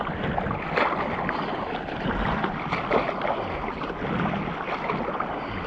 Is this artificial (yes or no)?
no